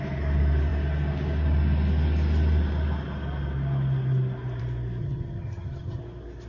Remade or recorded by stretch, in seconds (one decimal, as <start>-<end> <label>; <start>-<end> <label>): 0.0-5.0 recorded; 5.0-6.0 remade; 6.0-6.5 recorded